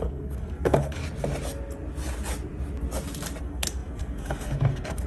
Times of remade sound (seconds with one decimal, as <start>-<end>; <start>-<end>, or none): 0.0-1.0; 3.4-5.1